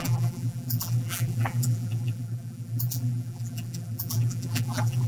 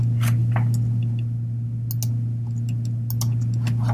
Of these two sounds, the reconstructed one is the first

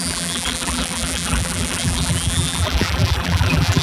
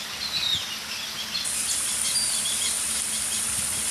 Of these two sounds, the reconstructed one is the first